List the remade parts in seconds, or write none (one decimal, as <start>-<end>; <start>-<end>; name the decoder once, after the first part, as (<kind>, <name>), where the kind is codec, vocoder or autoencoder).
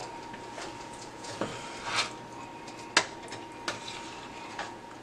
0.8-1.5 (vocoder, Vocos); 4.5-5.0